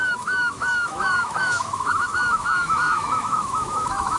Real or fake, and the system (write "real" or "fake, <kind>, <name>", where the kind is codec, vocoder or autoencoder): fake, autoencoder, DAC-VAE